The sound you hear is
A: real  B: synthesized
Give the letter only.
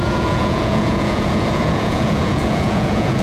B